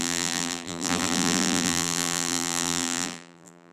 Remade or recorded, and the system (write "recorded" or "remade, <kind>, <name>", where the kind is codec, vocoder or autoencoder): remade, vocoder, BigVGAN v2